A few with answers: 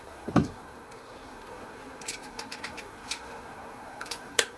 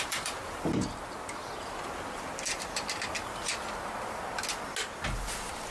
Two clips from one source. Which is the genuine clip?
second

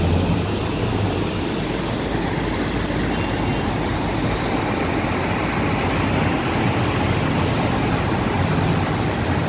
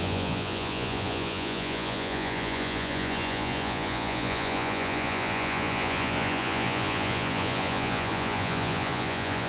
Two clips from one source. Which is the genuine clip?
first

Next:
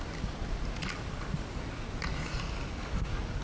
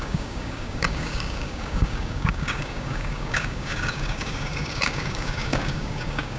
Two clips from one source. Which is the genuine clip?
first